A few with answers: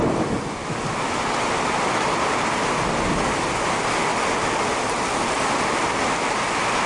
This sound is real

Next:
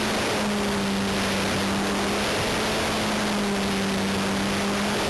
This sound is real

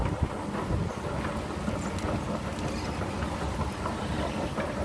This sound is real